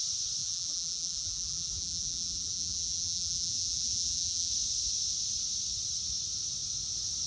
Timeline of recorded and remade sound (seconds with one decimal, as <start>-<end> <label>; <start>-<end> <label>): 0.0-0.4 recorded; 0.4-4.5 remade; 4.5-7.3 recorded